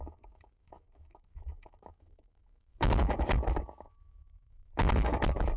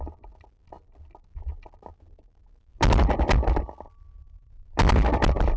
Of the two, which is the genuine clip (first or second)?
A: second